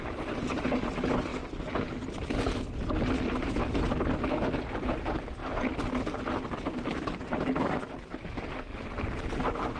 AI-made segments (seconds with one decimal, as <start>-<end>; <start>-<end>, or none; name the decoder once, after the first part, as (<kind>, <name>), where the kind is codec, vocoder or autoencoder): 1.3-1.9 (vocoder, BigVGAN v2); 5.4-7.8; 8.7-9.4